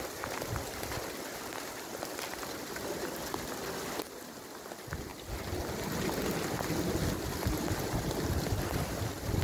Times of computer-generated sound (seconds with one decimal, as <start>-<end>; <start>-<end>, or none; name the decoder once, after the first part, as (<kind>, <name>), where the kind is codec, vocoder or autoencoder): none